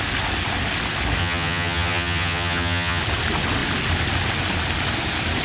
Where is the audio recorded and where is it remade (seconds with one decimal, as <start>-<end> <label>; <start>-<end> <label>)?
0.0-1.2 recorded; 1.2-3.0 remade; 3.0-5.4 recorded